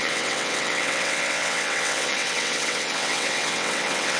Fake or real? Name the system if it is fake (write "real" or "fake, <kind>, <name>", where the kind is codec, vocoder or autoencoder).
fake, vocoder, WaveNeXt